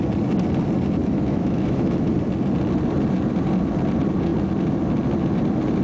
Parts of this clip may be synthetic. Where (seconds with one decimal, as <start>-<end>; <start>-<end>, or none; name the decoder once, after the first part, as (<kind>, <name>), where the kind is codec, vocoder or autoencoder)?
1.0-2.1 (autoencoder, DAC-VAE)